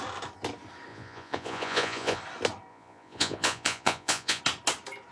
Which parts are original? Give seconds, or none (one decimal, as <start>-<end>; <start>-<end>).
0.0-0.9; 2.2-2.7; 4.4-5.1